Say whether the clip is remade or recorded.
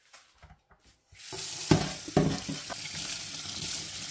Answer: recorded